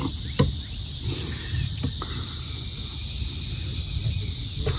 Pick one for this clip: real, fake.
real